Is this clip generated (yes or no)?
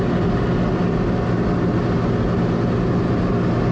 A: no